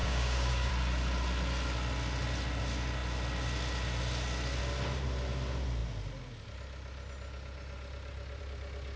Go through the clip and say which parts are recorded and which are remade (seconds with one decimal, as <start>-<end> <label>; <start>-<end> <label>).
0.0-0.7 remade; 0.7-9.0 recorded